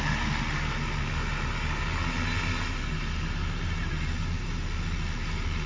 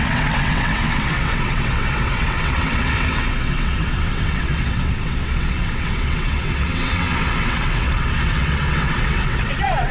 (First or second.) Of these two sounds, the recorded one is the first